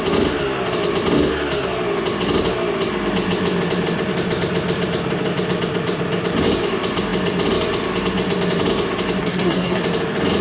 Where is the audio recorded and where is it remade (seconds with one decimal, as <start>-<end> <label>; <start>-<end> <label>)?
0.0-9.2 recorded; 9.2-9.8 remade; 9.8-10.4 recorded